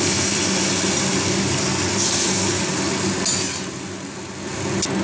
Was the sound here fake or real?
real